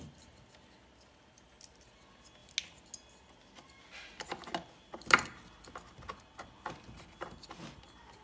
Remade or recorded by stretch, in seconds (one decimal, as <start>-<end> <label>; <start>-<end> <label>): 0.0-8.2 recorded